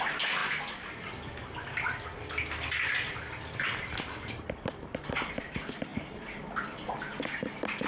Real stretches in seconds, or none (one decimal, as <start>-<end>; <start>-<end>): 0.0-7.9